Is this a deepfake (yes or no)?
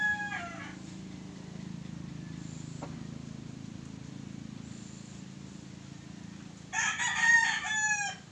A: no